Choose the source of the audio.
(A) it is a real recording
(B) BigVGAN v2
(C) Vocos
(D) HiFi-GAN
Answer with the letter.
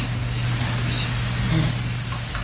A